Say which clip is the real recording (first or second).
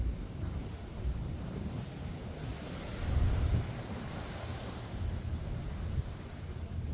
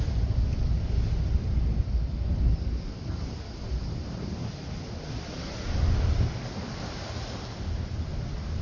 second